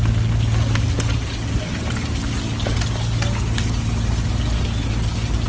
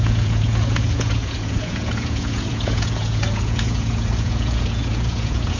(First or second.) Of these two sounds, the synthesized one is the second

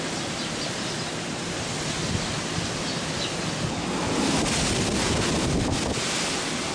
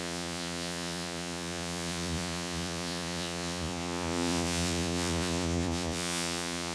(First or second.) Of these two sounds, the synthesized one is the second